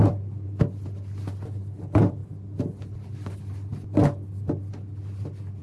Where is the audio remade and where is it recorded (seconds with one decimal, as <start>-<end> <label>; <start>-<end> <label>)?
0.0-5.6 recorded